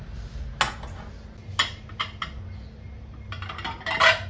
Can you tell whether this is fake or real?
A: real